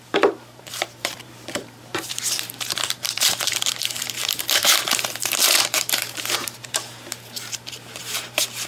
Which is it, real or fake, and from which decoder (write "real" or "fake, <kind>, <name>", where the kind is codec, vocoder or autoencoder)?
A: fake, vocoder, BigVGAN v2